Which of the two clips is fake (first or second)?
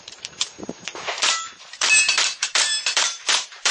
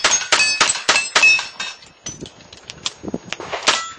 first